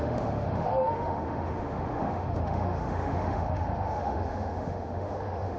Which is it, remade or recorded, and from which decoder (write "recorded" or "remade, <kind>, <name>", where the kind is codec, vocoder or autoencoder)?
remade, autoencoder, DAC-VAE